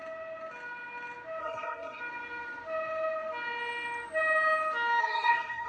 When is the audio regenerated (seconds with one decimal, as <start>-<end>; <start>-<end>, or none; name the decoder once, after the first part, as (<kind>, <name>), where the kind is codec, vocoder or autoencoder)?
1.4-2.0 (codec, SNAC); 5.0-5.7